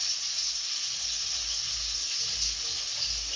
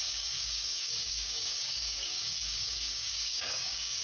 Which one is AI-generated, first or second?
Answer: second